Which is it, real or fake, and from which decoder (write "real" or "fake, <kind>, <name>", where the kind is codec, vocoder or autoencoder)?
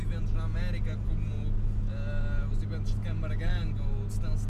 real